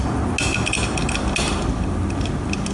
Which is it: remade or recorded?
recorded